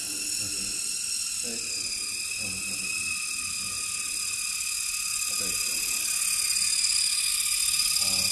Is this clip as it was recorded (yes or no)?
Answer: yes